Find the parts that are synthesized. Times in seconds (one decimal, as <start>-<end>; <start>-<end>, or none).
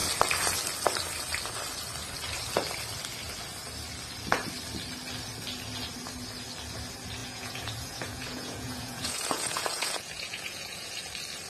7.2-10.9